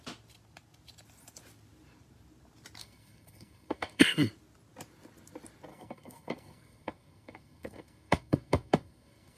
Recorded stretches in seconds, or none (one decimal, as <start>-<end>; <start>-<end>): 0.0-2.8; 4.3-5.7